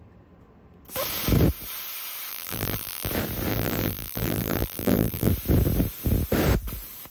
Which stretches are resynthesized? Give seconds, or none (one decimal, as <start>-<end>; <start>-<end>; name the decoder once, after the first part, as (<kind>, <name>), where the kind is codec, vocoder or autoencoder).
2.3-3.1 (vocoder, BigVGAN v2); 3.5-5.3